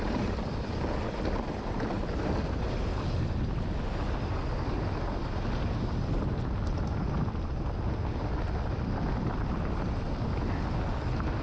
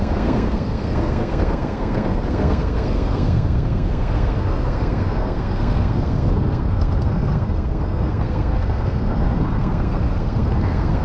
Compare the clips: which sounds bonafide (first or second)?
first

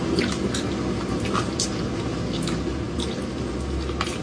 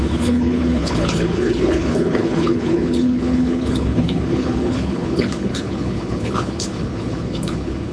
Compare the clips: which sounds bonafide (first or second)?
first